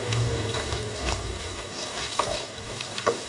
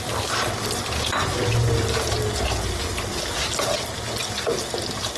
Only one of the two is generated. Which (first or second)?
first